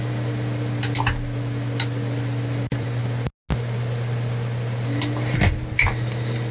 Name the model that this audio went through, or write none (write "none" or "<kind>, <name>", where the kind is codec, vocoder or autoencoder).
none